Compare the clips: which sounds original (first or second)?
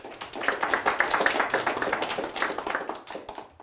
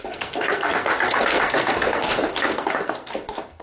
first